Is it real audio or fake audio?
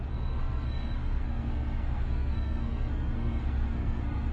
fake